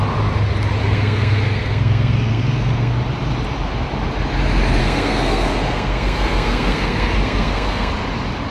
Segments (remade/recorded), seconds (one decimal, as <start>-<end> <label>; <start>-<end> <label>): 0.0-0.8 recorded; 0.8-2.9 remade; 2.9-4.8 recorded; 4.8-7.9 remade; 7.9-8.5 recorded